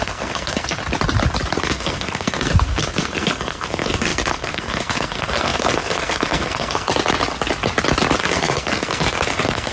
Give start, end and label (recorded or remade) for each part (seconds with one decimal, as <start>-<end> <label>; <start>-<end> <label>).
0.0-0.8 remade; 0.8-1.6 recorded; 1.6-6.9 remade; 6.9-8.2 recorded; 8.2-9.7 remade